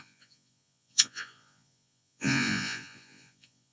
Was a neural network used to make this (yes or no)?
yes